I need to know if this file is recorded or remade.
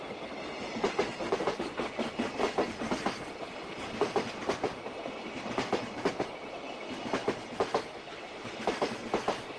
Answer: recorded